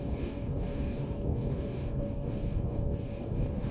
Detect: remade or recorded remade